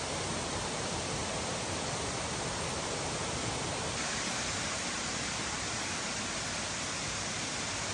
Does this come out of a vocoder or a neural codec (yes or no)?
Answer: yes